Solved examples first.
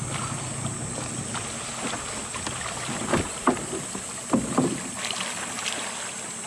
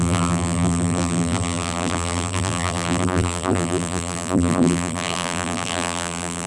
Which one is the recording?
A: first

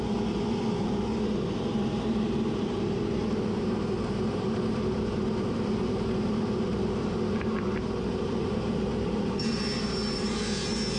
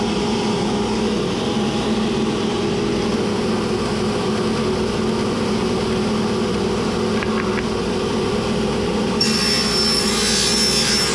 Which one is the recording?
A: second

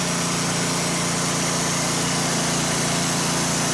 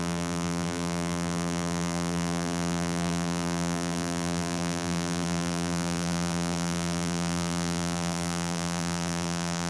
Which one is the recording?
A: first